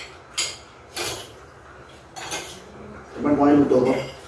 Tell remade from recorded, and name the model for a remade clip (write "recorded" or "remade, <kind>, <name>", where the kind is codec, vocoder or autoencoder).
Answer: recorded